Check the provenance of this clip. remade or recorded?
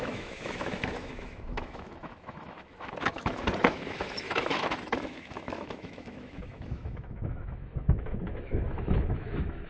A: remade